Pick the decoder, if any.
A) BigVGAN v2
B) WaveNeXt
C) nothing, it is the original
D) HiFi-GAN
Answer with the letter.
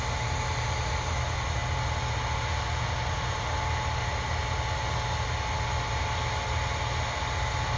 C